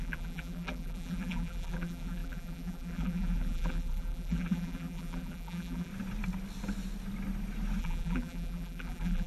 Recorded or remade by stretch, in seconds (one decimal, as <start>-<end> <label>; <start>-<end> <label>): 0.0-5.9 remade; 5.9-7.8 recorded; 7.8-9.3 remade